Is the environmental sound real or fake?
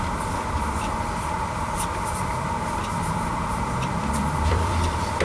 fake